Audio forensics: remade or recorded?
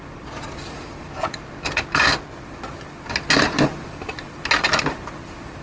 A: recorded